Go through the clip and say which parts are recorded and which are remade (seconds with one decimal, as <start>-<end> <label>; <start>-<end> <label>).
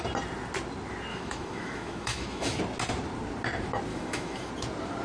0.0-1.1 recorded; 1.1-2.6 remade; 2.6-3.9 recorded; 3.9-4.5 remade; 4.5-5.0 recorded